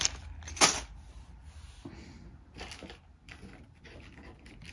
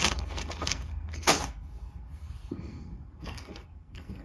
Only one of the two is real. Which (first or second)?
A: first